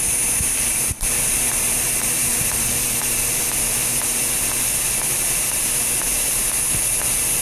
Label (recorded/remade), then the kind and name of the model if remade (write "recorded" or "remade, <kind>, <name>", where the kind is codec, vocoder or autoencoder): recorded